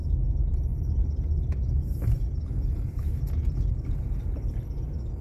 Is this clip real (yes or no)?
yes